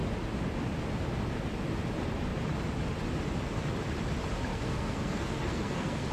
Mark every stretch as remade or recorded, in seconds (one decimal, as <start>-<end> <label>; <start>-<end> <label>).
0.0-4.5 recorded; 4.5-6.1 remade